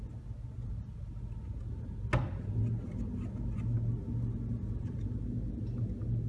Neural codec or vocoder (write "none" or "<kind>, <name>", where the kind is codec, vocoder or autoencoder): none